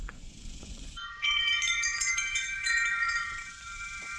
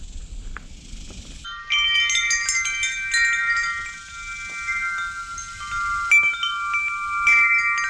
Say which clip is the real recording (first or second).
second